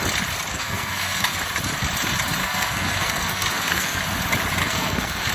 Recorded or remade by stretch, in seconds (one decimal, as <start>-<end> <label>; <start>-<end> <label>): 0.0-0.5 recorded; 0.5-1.4 remade; 1.4-2.4 recorded; 2.4-4.0 remade; 4.0-4.6 recorded; 4.6-5.3 remade